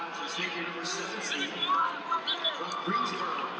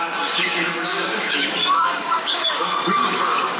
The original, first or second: first